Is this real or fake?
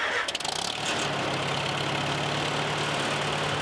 real